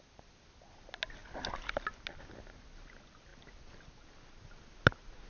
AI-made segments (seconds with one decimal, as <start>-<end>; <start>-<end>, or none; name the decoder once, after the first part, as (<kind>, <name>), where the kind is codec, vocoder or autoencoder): none